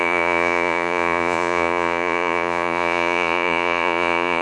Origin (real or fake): fake